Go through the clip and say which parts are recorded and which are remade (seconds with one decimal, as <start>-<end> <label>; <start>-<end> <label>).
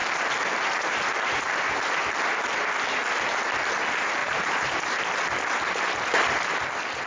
0.0-4.2 recorded; 4.2-5.0 remade; 5.0-7.1 recorded